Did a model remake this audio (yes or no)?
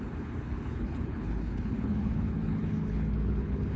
yes